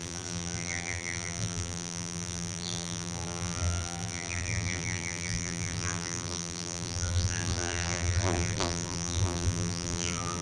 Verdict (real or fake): fake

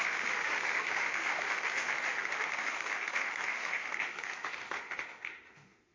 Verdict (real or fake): fake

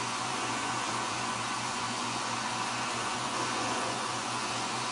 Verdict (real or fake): fake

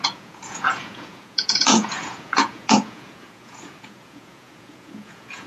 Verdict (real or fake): fake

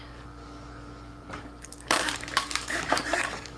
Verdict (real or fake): fake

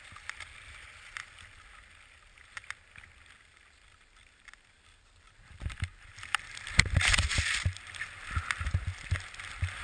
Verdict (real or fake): real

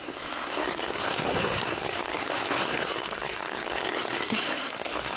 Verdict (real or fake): fake